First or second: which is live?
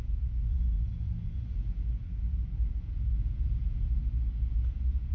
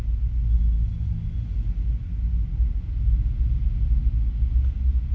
second